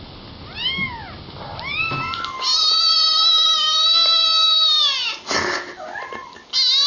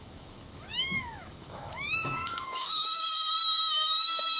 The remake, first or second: second